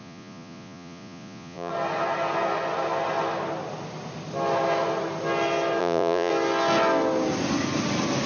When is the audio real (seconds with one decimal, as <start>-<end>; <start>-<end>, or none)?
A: 1.7-5.8; 6.3-8.3